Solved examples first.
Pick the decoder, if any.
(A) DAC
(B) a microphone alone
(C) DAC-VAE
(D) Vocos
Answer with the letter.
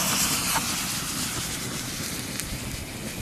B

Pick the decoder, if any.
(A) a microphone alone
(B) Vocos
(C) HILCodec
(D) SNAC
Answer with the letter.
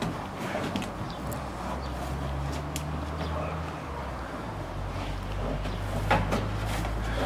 A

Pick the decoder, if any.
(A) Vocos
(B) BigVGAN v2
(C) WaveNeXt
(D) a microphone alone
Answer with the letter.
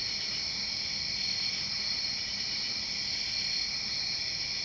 D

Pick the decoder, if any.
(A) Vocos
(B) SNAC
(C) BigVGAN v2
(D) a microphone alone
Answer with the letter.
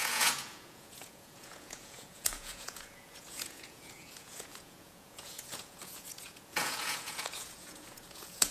A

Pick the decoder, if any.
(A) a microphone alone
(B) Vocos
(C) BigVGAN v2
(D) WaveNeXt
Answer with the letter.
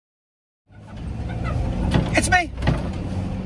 A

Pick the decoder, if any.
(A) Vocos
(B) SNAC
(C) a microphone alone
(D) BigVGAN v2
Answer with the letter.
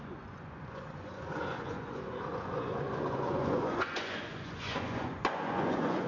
A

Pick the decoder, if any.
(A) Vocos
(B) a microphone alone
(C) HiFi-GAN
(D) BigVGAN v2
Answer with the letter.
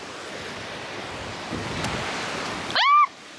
B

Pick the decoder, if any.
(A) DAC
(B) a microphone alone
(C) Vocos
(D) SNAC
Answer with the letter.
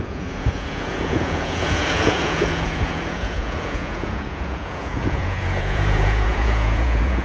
C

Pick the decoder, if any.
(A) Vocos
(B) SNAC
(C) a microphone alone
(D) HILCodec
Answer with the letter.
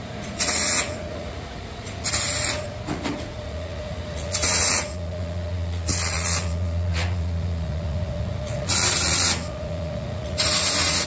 A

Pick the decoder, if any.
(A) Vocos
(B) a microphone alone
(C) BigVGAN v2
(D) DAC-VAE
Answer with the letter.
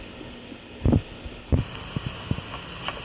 B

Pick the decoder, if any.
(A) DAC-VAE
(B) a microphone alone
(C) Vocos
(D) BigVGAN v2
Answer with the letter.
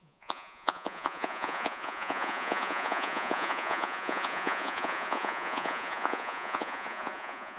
C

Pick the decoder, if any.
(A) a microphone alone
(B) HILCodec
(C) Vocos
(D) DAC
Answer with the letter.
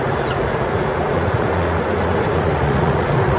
C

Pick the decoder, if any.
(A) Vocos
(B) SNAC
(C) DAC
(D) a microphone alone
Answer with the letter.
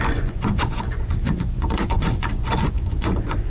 A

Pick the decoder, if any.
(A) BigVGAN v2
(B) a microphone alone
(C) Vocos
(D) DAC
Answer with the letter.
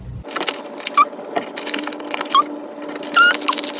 B